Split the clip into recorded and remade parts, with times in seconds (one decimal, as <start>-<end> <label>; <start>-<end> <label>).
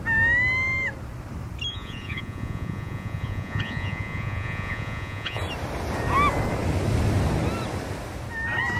0.0-1.7 recorded; 1.7-5.4 remade; 5.4-8.8 recorded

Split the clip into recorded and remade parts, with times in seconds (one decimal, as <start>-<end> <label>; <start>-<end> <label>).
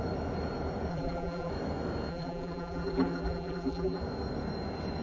0.0-0.9 recorded; 0.9-1.5 remade; 1.5-2.1 recorded; 2.1-4.0 remade; 4.0-5.0 recorded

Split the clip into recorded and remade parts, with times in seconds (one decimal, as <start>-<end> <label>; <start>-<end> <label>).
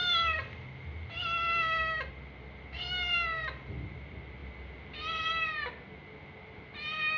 0.0-7.2 recorded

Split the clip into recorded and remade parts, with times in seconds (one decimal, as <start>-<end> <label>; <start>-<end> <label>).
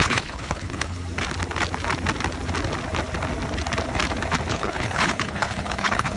0.0-1.0 remade; 1.0-4.5 recorded; 4.5-6.2 remade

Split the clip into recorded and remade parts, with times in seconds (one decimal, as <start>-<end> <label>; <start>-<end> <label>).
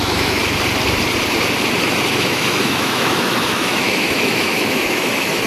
0.0-0.4 remade; 0.4-2.1 recorded; 2.1-5.5 remade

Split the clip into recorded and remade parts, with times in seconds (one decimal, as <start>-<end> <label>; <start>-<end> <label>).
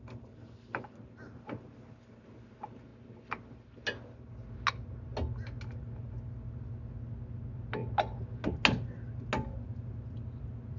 0.0-10.8 recorded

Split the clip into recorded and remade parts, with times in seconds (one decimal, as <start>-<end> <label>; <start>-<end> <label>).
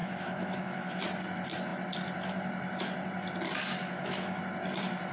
0.0-1.0 remade; 1.0-3.8 recorded; 3.8-4.4 remade; 4.4-5.1 recorded